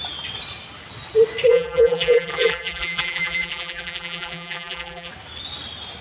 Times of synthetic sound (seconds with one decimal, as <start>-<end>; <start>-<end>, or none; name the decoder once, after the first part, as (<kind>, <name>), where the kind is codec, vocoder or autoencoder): 1.5-5.1 (vocoder, BigVGAN v2)